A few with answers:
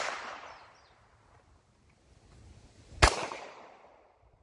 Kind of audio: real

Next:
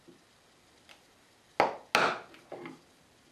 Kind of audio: real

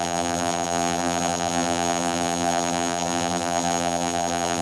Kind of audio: fake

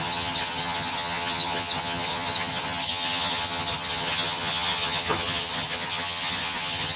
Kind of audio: fake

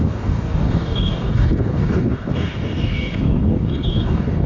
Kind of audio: fake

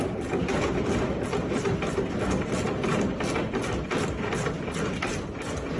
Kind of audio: real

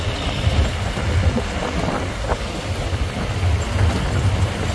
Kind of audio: real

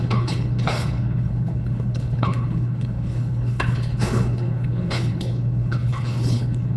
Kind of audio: fake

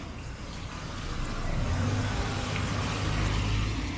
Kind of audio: real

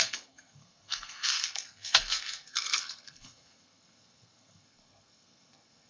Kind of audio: fake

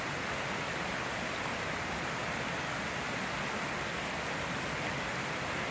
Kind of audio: real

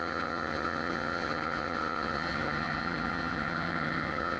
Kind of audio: fake